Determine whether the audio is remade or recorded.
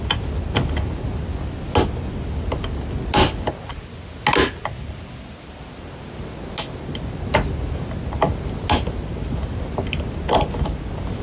recorded